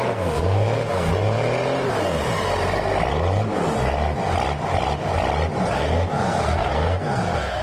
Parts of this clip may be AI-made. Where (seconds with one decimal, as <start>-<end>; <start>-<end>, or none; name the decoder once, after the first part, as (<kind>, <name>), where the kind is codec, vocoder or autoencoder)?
0.0-1.1 (codec, SNAC); 5.7-7.6